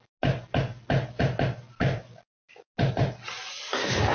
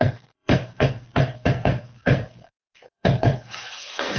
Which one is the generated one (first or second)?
second